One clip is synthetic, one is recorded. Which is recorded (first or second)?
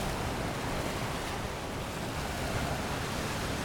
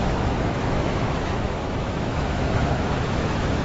first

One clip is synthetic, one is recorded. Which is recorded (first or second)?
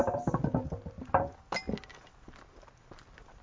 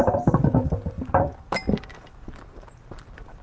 first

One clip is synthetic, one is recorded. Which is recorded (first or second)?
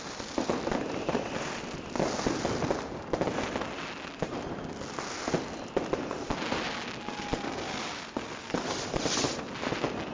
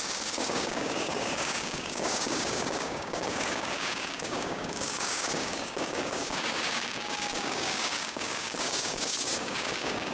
first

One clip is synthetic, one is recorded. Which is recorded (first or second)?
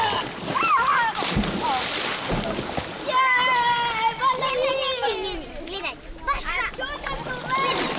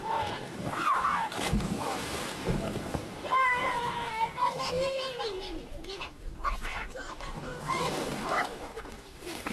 first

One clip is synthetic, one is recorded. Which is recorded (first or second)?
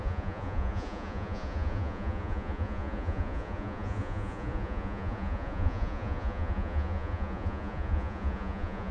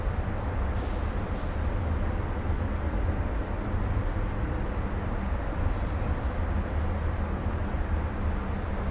second